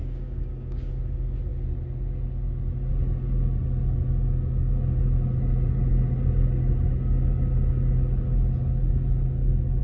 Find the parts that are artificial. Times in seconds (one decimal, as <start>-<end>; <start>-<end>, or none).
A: 0.0-0.9